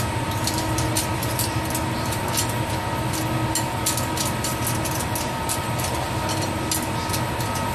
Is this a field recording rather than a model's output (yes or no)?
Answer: yes